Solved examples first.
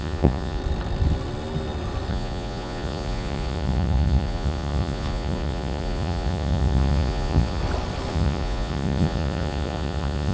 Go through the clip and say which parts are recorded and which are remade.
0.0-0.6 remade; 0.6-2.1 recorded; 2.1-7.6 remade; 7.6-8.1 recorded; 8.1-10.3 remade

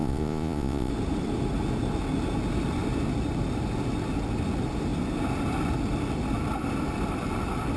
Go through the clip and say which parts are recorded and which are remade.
0.0-0.9 remade; 0.9-7.8 recorded

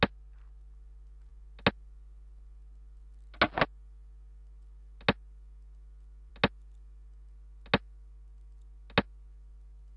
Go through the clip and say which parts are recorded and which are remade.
0.0-10.0 recorded

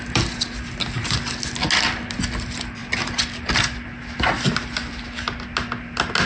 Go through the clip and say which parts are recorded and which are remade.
0.0-6.3 recorded

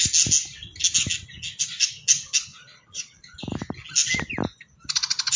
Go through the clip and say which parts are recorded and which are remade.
0.0-2.5 recorded; 2.5-3.3 remade; 3.3-5.4 recorded